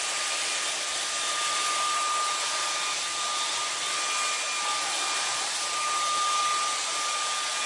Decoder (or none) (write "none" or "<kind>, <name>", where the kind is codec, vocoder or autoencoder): none